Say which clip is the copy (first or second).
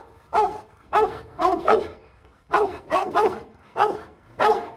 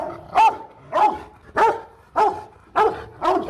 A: first